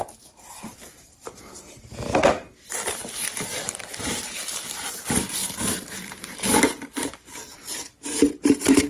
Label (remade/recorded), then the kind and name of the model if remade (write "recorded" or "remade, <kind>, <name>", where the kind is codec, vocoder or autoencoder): remade, vocoder, BigVGAN v2